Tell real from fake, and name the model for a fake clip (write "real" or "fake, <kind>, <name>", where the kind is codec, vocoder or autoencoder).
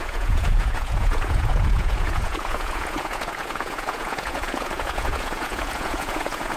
fake, vocoder, Vocos